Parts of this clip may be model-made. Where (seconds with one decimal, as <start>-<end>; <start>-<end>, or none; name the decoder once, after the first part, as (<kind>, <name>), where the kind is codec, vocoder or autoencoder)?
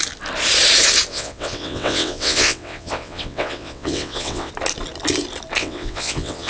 1.1-4.5 (vocoder, WaveNeXt); 5.6-6.5